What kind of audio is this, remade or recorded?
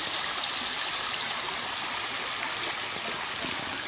recorded